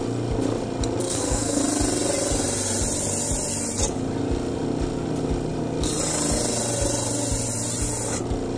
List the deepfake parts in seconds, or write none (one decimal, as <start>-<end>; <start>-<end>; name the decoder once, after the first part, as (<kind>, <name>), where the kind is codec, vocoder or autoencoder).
1.0-1.6 (codec, SNAC)